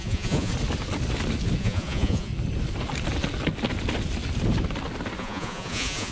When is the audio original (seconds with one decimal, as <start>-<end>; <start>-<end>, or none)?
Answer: 0.5-1.6; 2.3-5.2